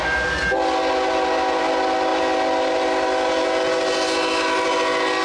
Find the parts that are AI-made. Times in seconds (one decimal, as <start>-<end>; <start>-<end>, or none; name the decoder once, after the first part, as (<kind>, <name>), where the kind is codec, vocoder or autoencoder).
none